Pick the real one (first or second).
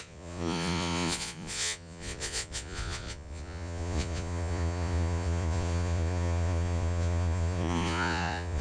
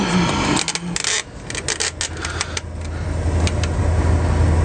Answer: second